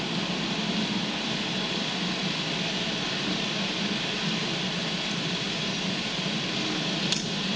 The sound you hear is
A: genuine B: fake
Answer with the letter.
B